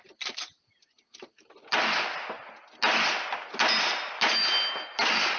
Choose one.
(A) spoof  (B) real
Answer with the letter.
B